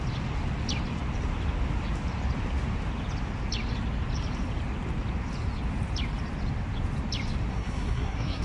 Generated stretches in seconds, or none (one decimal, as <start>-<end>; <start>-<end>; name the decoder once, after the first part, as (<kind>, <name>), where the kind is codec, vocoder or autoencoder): 7.5-8.4 (codec, SNAC)